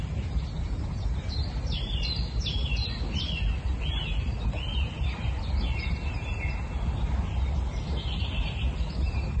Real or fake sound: real